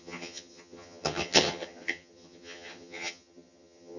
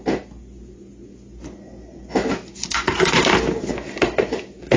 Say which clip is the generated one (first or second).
first